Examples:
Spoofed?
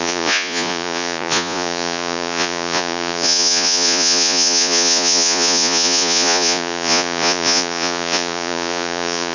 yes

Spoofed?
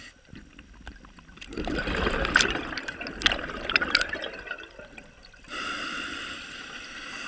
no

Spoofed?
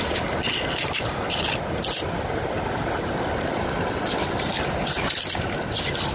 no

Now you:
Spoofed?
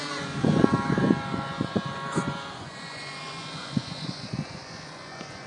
yes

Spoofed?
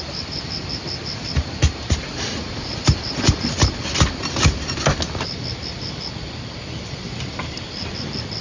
no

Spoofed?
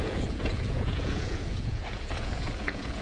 yes